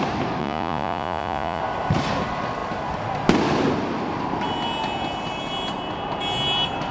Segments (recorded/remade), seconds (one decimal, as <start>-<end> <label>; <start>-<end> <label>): 0.0-0.4 recorded; 0.4-1.6 remade; 1.6-6.9 recorded